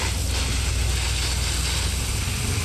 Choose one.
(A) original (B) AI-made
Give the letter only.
A